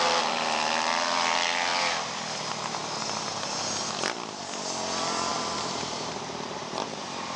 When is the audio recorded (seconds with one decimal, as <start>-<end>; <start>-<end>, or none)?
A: 0.0-1.7; 2.2-5.3